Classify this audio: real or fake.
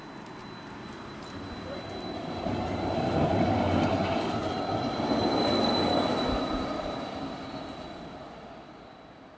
real